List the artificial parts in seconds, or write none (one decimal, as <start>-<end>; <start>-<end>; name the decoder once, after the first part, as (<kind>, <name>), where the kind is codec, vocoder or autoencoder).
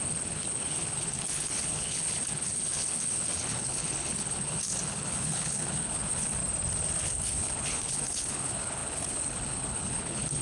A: 0.0-6.4 (codec, HILCodec); 7.0-10.4